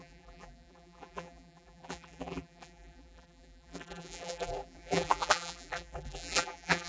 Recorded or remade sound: remade